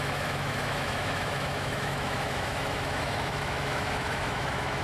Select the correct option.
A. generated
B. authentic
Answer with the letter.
A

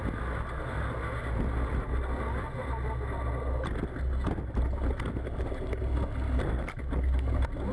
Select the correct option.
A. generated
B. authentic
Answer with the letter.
B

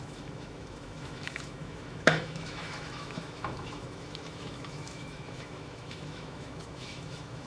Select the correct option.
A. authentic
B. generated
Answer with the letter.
B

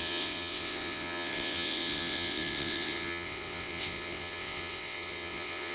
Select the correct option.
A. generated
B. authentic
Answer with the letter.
A